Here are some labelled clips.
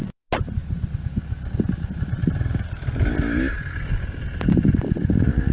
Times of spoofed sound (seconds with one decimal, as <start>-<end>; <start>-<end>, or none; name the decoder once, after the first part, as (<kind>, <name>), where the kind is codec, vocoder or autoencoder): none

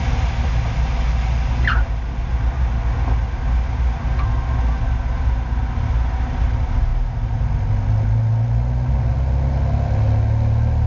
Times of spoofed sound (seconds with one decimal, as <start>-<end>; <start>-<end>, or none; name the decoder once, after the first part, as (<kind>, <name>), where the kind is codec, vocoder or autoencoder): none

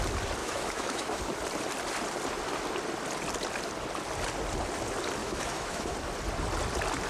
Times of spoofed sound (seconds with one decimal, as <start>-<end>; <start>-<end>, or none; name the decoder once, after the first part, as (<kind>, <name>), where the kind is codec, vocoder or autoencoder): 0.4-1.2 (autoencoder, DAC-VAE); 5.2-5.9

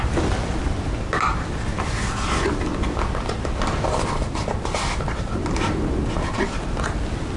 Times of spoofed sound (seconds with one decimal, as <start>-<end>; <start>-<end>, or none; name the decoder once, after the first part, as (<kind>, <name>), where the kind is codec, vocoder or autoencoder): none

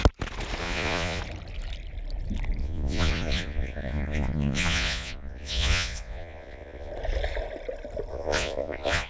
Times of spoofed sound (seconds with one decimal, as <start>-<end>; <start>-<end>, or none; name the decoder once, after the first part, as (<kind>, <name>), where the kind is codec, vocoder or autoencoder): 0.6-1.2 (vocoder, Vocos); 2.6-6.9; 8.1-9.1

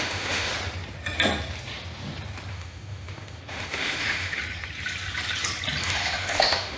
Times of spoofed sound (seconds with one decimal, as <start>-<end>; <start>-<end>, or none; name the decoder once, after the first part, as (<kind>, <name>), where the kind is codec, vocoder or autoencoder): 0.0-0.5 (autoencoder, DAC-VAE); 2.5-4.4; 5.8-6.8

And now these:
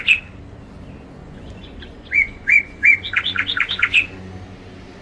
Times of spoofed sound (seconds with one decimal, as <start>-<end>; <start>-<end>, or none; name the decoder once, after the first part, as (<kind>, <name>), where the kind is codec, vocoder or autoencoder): 1.2-4.2 (vocoder, Vocos)

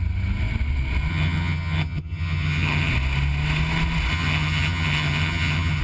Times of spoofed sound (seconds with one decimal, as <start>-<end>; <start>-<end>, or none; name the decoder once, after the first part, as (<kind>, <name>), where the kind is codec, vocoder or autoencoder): 1.1-2.9 (vocoder, HiFi-GAN); 4.1-5.8